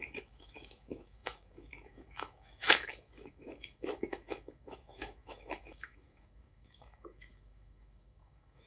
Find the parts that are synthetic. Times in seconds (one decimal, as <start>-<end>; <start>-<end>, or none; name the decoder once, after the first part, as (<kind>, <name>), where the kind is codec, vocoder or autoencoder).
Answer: 0.0-8.7 (autoencoder, DAC-VAE)